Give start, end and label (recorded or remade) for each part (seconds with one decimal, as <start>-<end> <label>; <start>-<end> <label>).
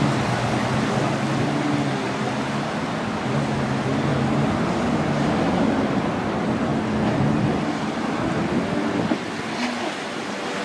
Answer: 0.0-10.6 recorded